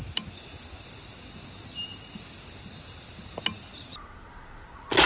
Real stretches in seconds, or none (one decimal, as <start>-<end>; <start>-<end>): 0.0-5.1